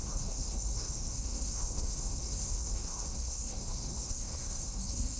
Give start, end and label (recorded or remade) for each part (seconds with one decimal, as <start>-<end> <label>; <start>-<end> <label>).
0.0-5.2 remade